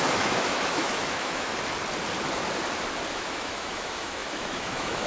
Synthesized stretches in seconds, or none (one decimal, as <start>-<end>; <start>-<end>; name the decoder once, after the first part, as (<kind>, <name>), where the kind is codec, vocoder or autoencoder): 0.0-1.5 (autoencoder, DAC-VAE); 3.1-5.1